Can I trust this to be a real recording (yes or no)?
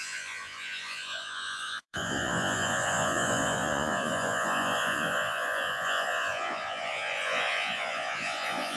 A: no